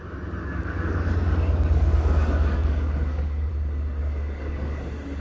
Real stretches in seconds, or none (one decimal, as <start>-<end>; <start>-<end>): 0.0-0.4; 3.5-4.0; 4.8-5.2